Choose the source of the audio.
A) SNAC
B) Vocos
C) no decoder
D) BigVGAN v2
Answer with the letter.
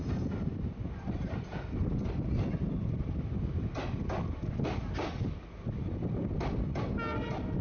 C